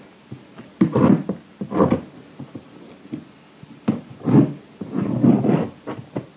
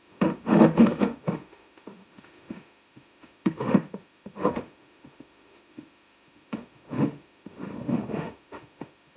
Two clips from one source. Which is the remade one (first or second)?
second